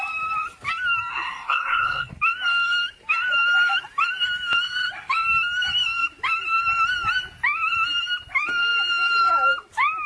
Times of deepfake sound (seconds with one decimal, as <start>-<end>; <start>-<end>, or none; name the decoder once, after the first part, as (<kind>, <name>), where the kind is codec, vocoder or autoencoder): 1.1-2.1 (codec, SNAC)